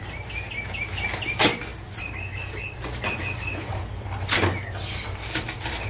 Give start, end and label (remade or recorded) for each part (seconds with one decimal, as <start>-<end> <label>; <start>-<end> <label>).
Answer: 0.0-5.9 recorded